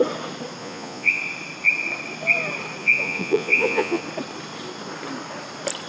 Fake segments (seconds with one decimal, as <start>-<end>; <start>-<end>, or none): 0.6-1.2; 2.8-4.0

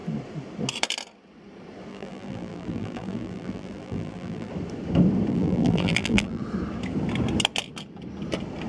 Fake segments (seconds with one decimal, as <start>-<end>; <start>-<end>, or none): 1.9-4.5; 5.3-6.4